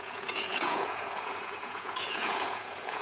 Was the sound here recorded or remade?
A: remade